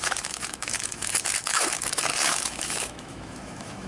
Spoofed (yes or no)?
yes